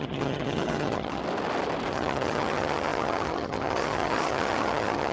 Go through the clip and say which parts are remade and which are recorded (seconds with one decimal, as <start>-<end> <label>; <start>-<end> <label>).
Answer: 0.0-1.2 remade; 1.2-1.9 recorded; 1.9-5.1 remade